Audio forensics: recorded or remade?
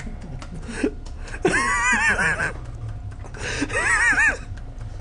recorded